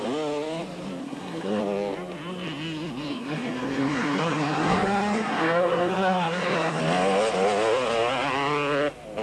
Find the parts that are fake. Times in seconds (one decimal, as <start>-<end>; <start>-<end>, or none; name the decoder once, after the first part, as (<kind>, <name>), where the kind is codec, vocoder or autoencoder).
1.0-1.6 (codec, SNAC); 3.1-6.8